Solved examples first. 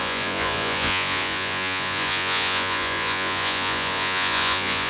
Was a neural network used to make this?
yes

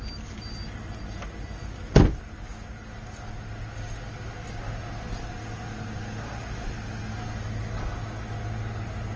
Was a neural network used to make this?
no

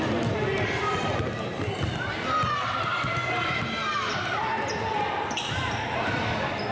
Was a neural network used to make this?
no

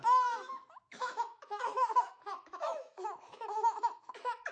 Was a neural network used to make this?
yes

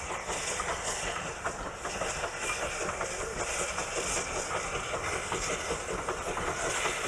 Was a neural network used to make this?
no